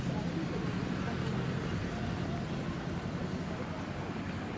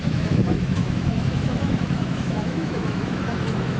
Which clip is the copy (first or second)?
second